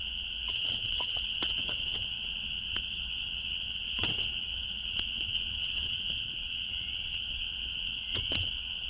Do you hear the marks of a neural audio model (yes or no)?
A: yes